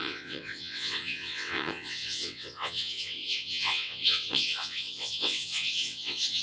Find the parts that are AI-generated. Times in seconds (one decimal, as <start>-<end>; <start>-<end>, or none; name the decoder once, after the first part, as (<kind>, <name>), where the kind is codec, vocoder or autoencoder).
0.0-6.4 (vocoder, WaveNeXt)

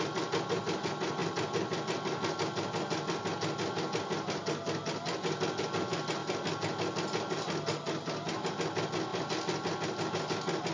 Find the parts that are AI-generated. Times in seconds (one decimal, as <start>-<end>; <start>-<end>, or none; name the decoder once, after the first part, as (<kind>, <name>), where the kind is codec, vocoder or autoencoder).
none